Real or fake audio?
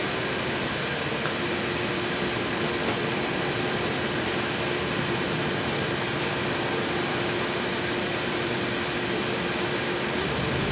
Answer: fake